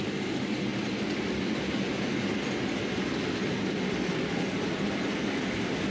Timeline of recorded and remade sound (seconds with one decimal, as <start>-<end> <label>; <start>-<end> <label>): 0.0-5.9 recorded